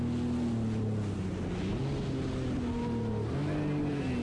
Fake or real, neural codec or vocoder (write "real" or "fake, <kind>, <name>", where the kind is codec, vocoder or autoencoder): real